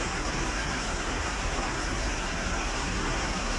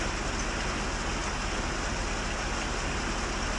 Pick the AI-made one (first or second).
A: first